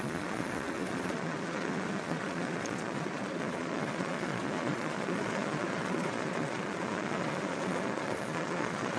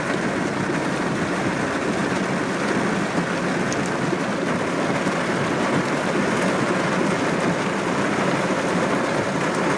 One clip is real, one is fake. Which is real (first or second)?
second